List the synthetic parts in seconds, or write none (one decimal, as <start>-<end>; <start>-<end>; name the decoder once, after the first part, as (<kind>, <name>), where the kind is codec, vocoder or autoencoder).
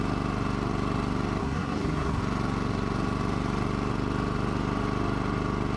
1.4-2.2 (codec, SNAC)